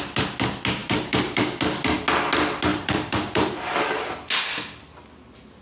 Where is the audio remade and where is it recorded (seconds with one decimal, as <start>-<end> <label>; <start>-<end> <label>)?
0.0-0.8 recorded; 0.8-1.4 remade; 1.4-2.7 recorded; 2.7-3.7 remade; 3.7-5.6 recorded